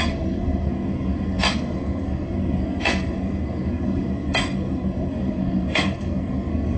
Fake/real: fake